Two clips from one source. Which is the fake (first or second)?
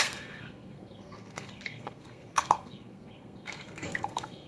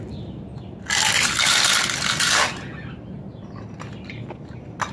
first